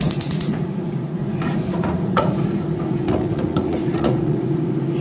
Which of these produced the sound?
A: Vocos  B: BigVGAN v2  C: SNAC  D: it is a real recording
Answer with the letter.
A